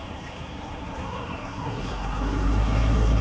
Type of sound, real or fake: fake